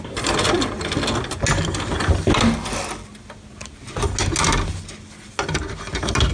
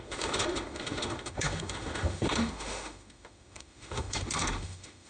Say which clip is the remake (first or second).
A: second